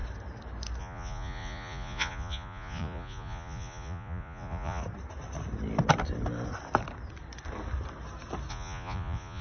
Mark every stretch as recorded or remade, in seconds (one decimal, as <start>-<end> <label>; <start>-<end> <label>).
0.0-0.8 recorded; 0.8-4.8 remade; 4.8-8.5 recorded; 8.5-9.4 remade